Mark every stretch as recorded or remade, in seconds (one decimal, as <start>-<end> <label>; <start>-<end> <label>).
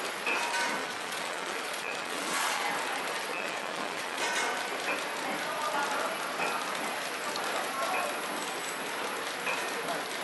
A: 0.0-0.8 recorded; 0.8-2.6 remade; 2.6-3.3 recorded; 3.3-4.2 remade; 4.2-10.2 recorded